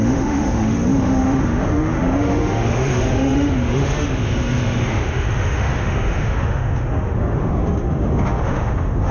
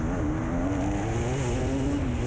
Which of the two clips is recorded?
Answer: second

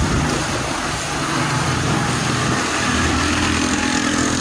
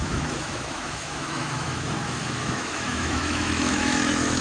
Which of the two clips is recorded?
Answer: first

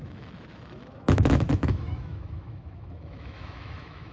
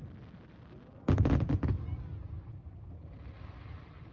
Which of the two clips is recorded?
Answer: second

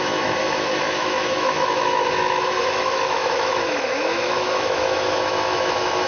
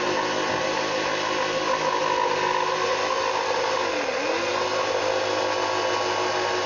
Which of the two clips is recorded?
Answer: second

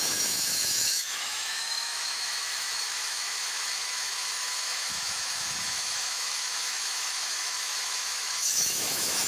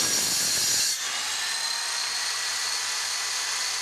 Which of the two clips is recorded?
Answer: second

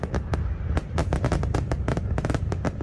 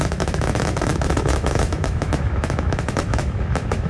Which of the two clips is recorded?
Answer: first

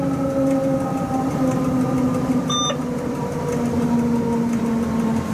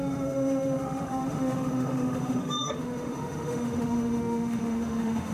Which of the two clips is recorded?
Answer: first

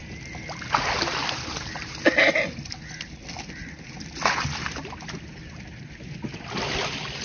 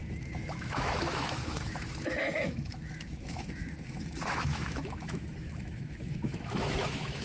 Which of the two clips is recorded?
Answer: first